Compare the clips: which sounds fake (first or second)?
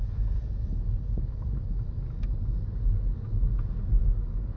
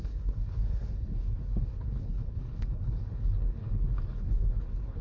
second